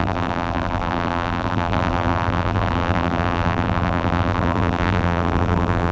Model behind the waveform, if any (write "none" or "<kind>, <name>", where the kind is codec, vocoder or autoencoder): vocoder, BigVGAN v2